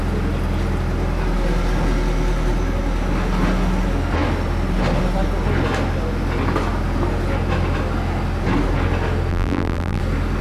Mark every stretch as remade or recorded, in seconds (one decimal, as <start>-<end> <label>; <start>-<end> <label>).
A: 0.0-9.3 recorded; 9.3-10.0 remade; 10.0-10.4 recorded